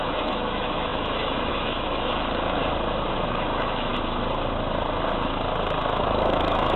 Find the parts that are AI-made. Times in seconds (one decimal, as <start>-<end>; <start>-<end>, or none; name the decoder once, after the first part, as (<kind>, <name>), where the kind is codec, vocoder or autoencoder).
0.0-2.6 (autoencoder, DAC-VAE); 3.3-3.9; 6.0-6.8